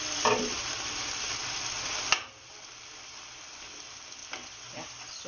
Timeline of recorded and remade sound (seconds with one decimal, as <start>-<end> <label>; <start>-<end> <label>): 0.0-5.3 recorded